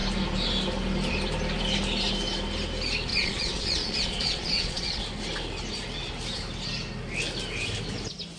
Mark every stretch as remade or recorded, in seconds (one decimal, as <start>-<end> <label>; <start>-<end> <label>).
0.0-3.1 recorded; 3.1-5.0 remade; 5.0-8.4 recorded